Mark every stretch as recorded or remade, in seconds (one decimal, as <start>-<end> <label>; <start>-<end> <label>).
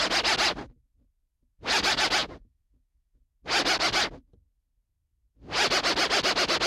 0.0-2.2 recorded; 2.2-3.2 remade; 3.2-6.7 recorded